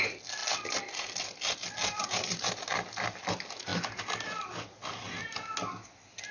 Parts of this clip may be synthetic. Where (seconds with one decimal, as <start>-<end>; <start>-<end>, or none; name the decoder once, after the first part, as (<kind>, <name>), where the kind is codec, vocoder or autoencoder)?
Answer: none